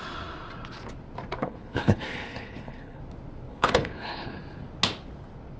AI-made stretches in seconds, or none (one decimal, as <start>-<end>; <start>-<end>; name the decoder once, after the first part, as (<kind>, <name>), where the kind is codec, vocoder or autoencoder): 1.4-3.0 (codec, HILCodec); 3.5-4.4